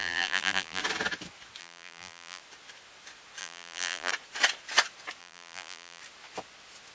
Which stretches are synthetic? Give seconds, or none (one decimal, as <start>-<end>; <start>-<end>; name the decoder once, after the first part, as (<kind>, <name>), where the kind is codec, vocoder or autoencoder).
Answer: 0.0-0.8 (vocoder, BigVGAN v2); 1.6-2.4; 3.4-4.1; 5.2-6.0